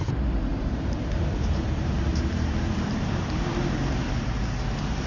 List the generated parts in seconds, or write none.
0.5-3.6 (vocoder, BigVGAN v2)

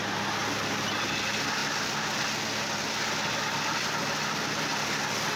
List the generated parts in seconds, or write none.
none

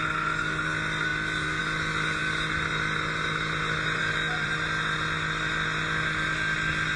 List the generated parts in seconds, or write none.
none

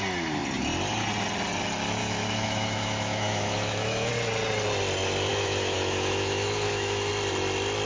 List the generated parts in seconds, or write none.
2.0-4.1 (autoencoder, DAC-VAE); 5.3-7.1

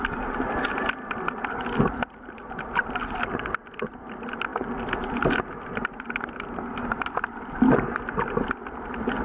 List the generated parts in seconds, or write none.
none

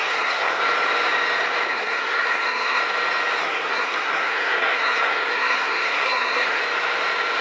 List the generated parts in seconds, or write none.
0.0-0.6 (codec, SNAC); 1.7-2.8; 3.4-6.6

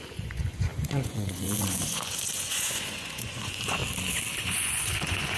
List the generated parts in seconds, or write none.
0.0-3.8 (vocoder, Vocos); 4.4-5.4

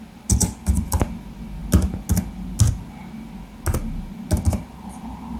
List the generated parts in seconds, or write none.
0.4-1.0 (vocoder, BigVGAN v2)